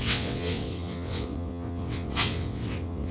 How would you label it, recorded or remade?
remade